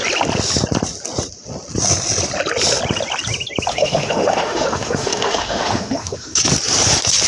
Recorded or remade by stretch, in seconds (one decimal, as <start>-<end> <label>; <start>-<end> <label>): 0.0-3.7 recorded; 3.7-6.4 remade; 6.4-7.3 recorded